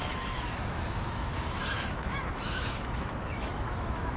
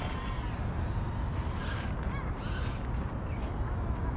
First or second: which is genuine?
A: second